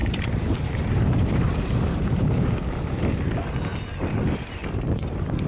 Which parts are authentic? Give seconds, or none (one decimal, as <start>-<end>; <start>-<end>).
2.6-5.5